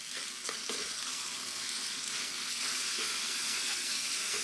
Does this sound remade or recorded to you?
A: remade